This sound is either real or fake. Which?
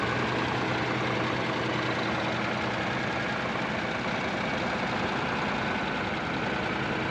real